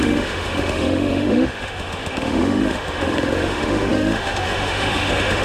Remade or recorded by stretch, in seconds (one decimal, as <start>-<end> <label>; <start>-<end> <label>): 0.0-5.4 remade